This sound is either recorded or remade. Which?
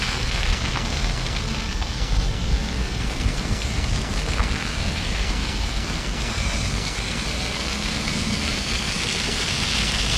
remade